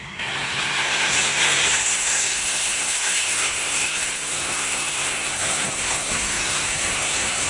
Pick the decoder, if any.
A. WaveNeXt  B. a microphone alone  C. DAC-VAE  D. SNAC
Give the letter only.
D